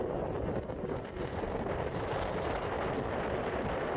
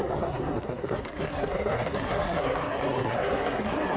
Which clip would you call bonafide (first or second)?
first